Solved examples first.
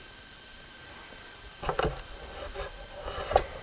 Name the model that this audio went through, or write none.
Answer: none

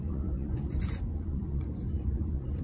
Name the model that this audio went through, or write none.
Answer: vocoder, Vocos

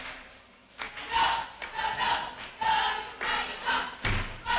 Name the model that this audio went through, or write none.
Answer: none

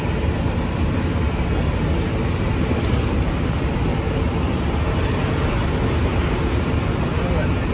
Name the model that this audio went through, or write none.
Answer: none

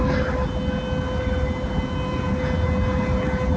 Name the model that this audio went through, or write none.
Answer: none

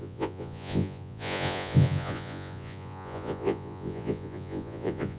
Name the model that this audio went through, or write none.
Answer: vocoder, Vocos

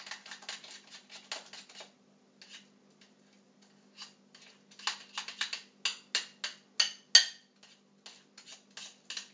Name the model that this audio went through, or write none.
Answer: none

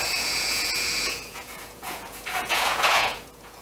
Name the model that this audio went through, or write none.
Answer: vocoder, Vocos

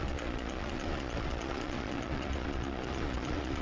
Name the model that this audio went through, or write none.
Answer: vocoder, Vocos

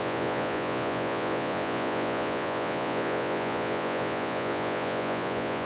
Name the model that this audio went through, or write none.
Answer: vocoder, Vocos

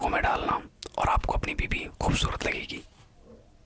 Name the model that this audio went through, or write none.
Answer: none